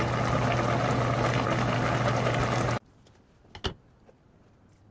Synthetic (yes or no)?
no